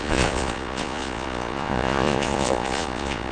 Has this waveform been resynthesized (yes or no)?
yes